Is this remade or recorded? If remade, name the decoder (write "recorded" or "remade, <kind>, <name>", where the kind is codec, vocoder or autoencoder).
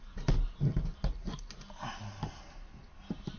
recorded